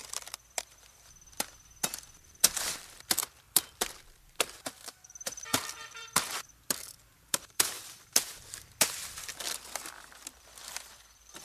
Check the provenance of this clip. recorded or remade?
remade